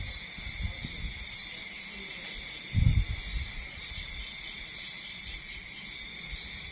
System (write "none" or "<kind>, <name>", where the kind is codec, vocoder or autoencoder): none